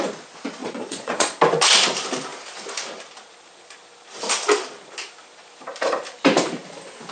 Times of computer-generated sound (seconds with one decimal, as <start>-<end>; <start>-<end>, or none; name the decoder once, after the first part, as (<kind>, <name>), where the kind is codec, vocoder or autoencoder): 0.6-1.4 (vocoder, Vocos)